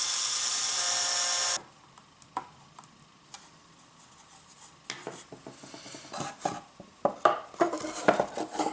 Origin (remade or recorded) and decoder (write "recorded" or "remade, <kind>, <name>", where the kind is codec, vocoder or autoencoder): recorded